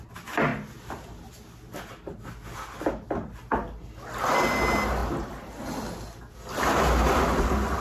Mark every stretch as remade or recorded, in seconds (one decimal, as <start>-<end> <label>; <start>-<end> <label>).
0.0-0.5 recorded; 0.5-1.1 remade; 1.1-5.0 recorded; 5.0-5.6 remade; 5.6-7.8 recorded